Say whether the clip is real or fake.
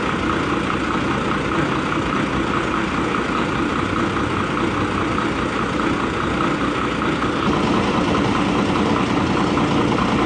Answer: real